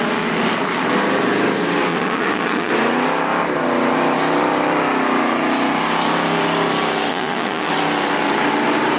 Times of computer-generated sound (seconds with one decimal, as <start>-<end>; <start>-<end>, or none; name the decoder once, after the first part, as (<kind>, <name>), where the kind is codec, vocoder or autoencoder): 1.9-2.7 (vocoder, Vocos); 7.1-7.7